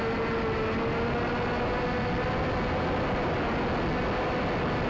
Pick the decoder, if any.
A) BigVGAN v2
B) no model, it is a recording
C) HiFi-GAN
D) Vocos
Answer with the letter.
B